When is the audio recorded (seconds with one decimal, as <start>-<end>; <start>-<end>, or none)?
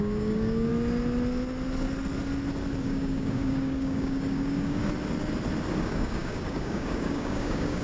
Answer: 0.7-2.8; 4.8-5.8